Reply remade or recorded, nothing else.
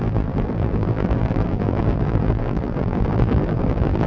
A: remade